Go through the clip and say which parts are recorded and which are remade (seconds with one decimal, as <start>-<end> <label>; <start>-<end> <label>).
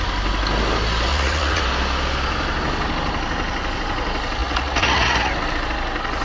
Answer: 0.0-1.1 recorded; 1.1-1.6 remade; 1.6-4.4 recorded; 4.4-5.3 remade; 5.3-6.2 recorded